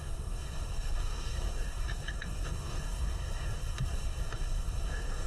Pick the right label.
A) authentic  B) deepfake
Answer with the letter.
B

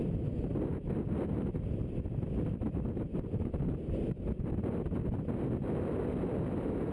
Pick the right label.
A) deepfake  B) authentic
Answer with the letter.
B